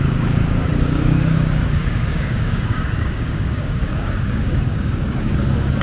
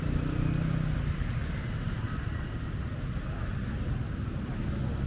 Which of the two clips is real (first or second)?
second